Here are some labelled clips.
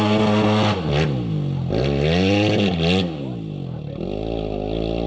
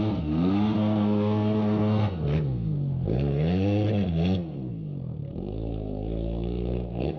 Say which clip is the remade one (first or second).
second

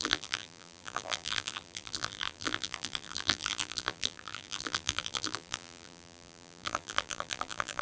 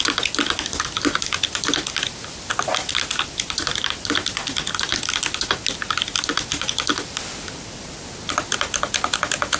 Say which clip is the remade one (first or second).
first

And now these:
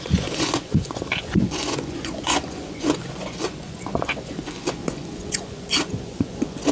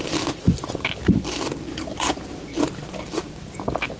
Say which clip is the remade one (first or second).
first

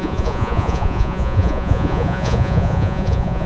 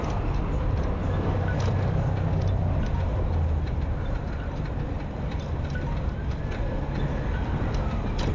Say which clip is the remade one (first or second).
first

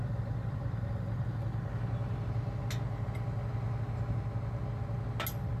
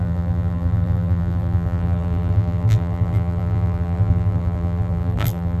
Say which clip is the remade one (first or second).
second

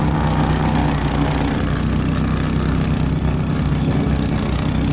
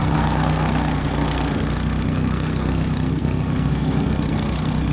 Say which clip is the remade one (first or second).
second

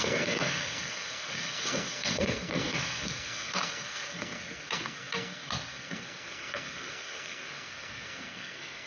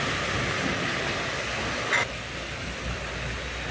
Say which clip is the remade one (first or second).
first